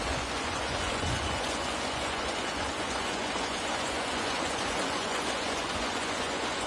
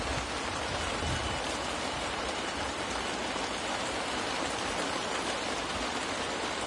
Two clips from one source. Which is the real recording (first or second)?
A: second